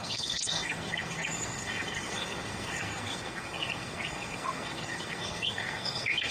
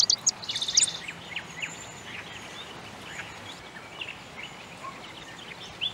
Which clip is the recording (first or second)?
second